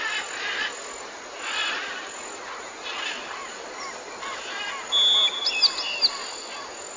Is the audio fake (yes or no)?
no